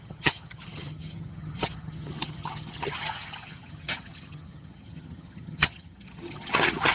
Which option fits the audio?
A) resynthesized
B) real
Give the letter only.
A